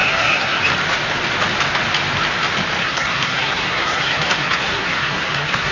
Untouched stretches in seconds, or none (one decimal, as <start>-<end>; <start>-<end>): 0.6-2.8